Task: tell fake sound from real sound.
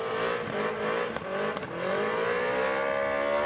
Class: real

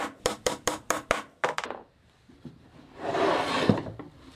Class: fake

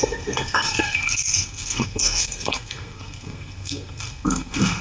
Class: fake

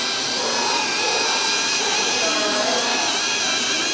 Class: real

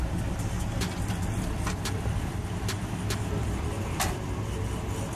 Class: fake